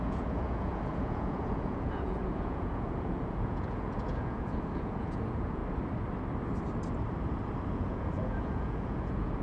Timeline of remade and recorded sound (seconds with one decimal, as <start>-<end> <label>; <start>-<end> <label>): 0.0-5.6 remade; 5.6-7.7 recorded; 7.7-9.4 remade